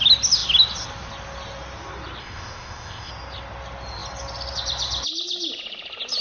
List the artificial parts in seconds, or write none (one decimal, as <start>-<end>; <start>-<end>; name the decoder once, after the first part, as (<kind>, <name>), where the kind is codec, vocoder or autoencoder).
2.2-3.1 (codec, ZipCodec)